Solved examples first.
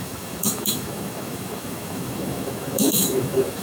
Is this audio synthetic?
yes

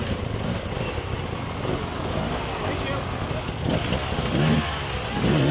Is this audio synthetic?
no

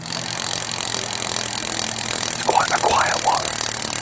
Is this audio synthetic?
no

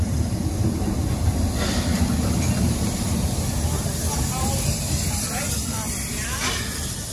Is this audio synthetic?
yes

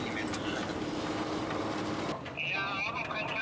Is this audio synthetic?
no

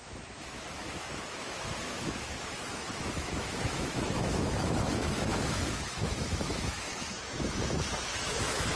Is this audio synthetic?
yes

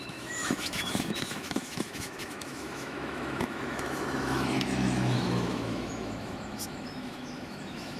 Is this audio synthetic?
yes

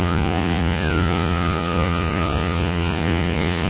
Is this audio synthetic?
yes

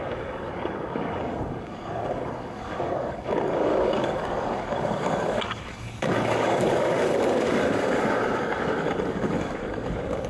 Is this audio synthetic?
yes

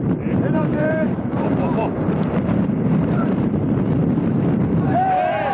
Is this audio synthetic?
yes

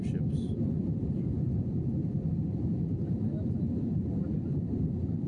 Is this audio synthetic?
no